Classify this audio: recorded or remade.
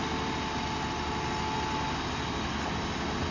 recorded